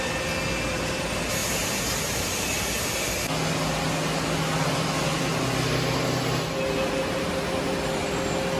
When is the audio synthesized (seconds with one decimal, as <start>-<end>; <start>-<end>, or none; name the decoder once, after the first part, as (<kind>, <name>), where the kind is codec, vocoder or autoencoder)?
none